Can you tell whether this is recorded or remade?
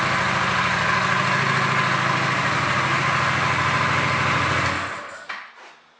recorded